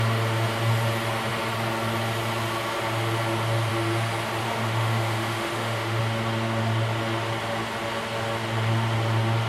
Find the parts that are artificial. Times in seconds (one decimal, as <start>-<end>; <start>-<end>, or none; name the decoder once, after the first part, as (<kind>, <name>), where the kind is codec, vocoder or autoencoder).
4.4-6.0 (autoencoder, DAC-VAE)